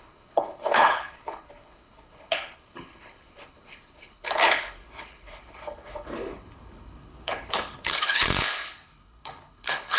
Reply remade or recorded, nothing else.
remade